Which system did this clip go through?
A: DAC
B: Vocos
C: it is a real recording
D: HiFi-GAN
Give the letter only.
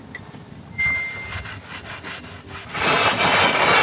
C